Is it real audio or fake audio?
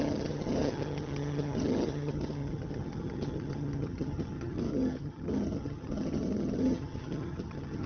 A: fake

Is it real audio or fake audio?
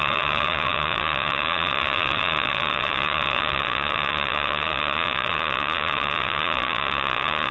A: fake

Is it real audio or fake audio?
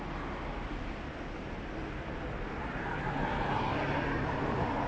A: real